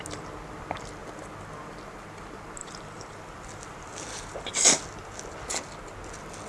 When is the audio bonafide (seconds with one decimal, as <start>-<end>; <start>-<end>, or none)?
0.0-2.6; 4.5-6.5

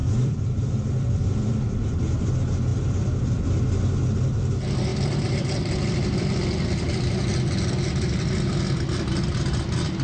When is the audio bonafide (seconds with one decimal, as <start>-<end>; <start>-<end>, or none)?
1.5-2.7; 3.2-4.9; 7.2-10.0

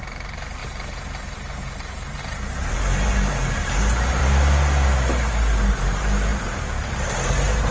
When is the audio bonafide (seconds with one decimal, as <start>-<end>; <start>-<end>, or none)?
4.2-5.7

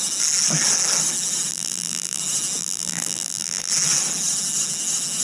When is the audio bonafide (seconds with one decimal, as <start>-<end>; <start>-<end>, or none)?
0.0-1.5; 2.2-2.6; 3.7-5.2

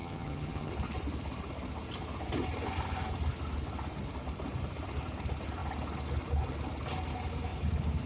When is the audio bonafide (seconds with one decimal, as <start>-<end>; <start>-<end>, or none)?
0.7-8.1

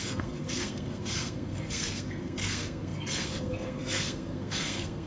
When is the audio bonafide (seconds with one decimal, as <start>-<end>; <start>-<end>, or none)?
none

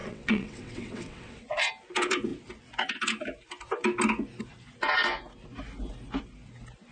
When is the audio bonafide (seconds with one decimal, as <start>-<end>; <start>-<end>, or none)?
1.7-6.9